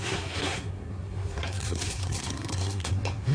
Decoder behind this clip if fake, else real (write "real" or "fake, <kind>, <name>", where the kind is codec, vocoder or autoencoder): fake, codec, SNAC